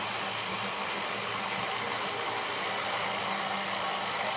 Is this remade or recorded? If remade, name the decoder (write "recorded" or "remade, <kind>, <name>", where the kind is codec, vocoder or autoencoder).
recorded